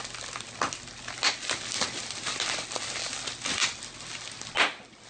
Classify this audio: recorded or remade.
recorded